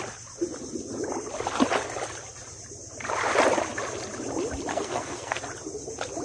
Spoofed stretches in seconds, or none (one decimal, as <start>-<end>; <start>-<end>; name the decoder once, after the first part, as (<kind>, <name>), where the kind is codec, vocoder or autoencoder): 4.7-5.4 (codec, SNAC)